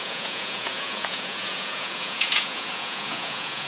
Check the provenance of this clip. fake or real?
fake